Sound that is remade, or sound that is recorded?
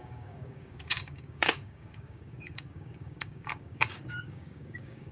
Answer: remade